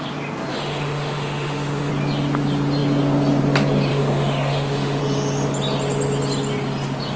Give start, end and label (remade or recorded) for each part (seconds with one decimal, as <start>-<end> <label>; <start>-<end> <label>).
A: 0.0-0.5 recorded; 0.5-1.9 remade; 1.9-3.9 recorded; 3.9-5.0 remade; 5.0-7.2 recorded